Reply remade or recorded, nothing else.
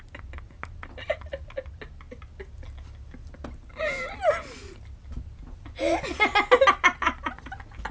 recorded